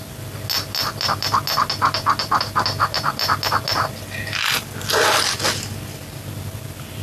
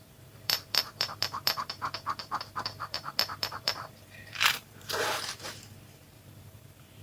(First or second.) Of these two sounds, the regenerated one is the second